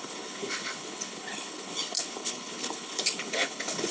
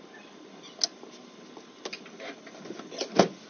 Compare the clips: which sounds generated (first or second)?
first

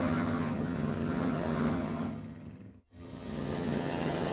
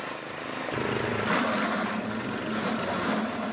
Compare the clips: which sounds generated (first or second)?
first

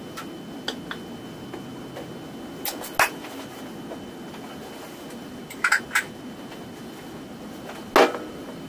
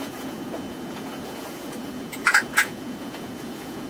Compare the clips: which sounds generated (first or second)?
second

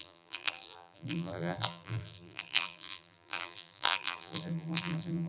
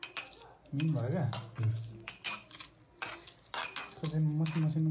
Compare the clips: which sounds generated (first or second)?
first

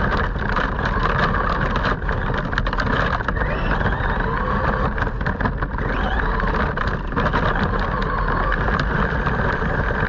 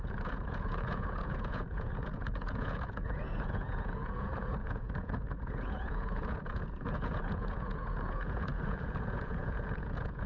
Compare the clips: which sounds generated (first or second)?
second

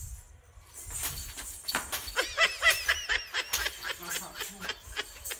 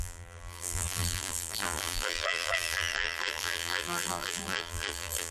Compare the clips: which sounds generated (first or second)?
second